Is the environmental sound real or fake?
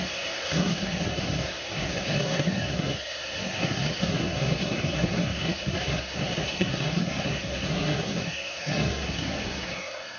fake